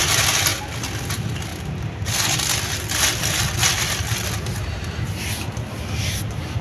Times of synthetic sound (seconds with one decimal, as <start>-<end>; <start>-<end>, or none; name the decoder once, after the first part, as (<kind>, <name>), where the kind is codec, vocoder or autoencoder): none